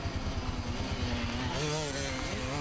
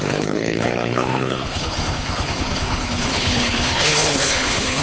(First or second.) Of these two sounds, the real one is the first